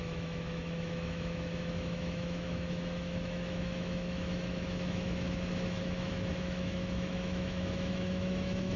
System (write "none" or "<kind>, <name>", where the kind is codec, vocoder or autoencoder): autoencoder, DAC-VAE